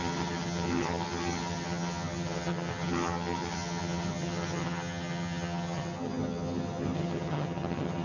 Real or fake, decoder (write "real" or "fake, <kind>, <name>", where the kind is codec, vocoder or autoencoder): fake, vocoder, HiFi-GAN